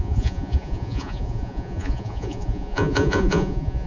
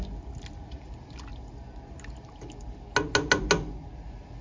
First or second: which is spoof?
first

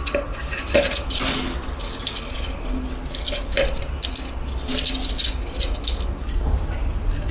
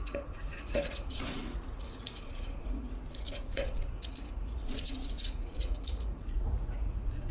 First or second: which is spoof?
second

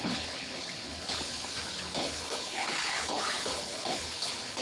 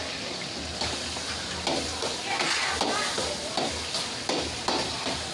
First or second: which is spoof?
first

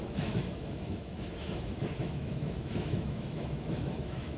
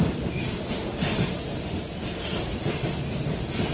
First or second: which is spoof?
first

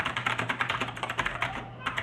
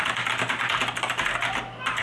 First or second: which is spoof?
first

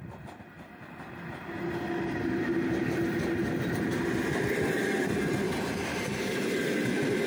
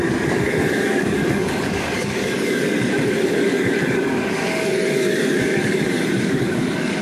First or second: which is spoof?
second